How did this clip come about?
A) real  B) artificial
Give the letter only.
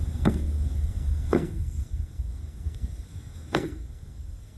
B